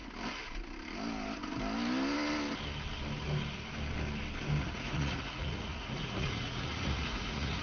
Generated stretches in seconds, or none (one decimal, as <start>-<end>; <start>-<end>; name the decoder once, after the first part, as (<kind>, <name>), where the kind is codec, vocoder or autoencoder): 4.6-7.6 (vocoder, Vocos)

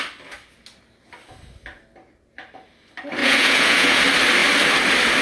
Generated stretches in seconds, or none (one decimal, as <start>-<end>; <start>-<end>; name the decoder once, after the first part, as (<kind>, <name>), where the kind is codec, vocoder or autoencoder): 3.2-4.0 (vocoder, Vocos)

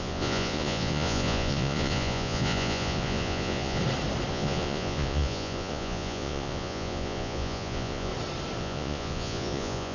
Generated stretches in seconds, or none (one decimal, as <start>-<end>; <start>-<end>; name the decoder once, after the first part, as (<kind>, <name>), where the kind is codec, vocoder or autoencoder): 0.0-3.8 (vocoder, Vocos); 4.3-8.1; 8.6-9.9

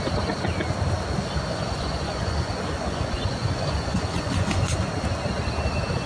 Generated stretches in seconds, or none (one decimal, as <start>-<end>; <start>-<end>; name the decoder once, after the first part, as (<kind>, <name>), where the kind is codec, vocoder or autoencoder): 1.5-4.8 (vocoder, Vocos)

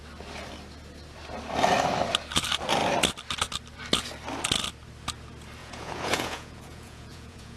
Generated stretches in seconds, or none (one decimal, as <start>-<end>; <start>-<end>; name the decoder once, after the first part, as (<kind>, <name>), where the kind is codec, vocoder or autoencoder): 5.6-7.6 (vocoder, Vocos)

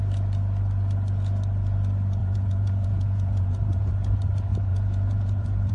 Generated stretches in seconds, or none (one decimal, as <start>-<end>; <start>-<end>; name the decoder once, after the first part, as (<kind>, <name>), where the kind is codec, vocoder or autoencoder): 2.2-3.9 (vocoder, Vocos); 4.7-5.7

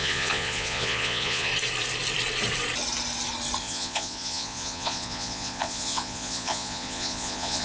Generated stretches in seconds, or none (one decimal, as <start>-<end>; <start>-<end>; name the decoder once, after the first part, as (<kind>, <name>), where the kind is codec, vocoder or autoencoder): 0.0-1.5 (vocoder, Vocos); 3.6-7.6